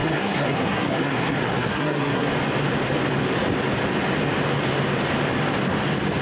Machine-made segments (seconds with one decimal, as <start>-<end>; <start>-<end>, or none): 0.0-2.3